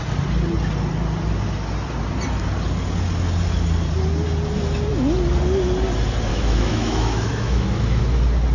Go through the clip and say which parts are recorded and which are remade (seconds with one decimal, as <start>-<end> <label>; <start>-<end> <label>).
0.0-6.3 recorded; 6.3-8.0 remade; 8.0-8.5 recorded

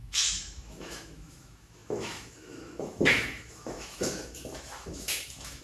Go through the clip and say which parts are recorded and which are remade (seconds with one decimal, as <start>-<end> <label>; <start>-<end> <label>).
0.0-5.6 remade

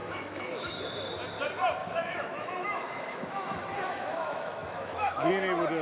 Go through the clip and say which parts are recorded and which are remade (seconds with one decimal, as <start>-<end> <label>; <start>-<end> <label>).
0.0-0.8 remade; 0.8-1.8 recorded; 1.8-5.3 remade; 5.3-5.8 recorded

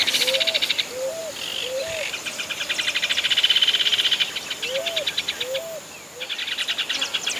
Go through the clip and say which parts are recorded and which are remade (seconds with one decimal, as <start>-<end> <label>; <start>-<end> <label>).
0.0-7.4 recorded

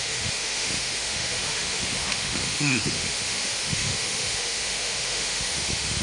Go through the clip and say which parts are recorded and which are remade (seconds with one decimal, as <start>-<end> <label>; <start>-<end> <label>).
0.0-6.0 remade